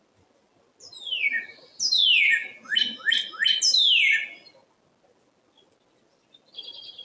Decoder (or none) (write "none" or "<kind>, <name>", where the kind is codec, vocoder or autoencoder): none